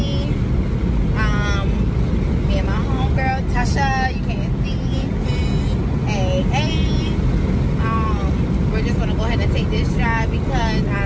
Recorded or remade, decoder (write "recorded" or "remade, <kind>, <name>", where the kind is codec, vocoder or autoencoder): recorded